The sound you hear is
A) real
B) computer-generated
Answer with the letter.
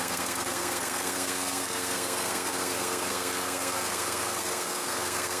B